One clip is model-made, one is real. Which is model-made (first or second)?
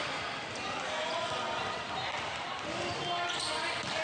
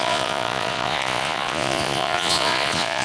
second